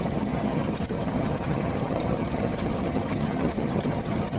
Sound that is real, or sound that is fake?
fake